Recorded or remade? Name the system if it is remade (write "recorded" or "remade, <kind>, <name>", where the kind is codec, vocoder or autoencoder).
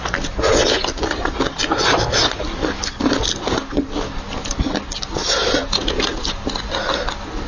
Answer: recorded